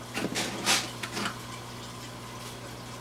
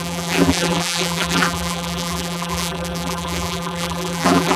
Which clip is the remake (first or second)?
second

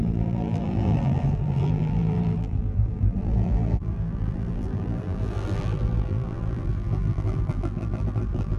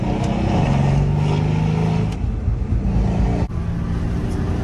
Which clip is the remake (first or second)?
first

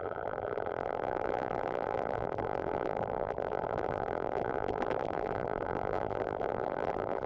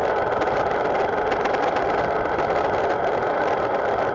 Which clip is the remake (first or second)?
first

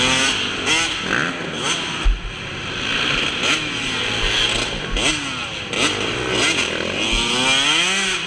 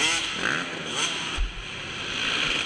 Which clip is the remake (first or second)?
second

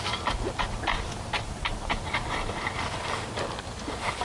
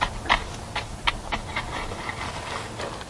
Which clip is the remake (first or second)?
first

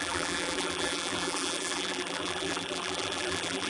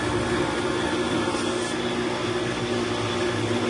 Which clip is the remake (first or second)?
first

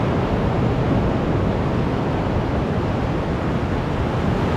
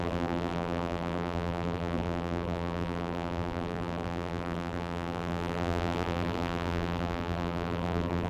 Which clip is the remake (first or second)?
second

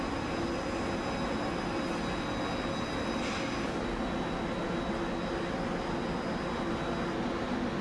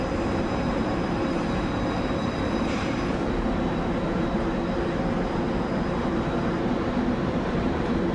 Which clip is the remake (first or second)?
second